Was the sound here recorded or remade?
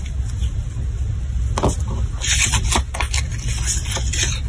recorded